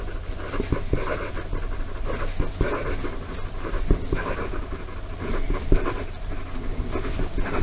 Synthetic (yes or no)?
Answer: no